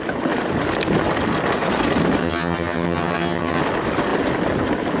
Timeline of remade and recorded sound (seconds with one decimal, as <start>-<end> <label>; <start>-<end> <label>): 0.0-2.2 recorded; 2.2-3.6 remade; 3.6-5.0 recorded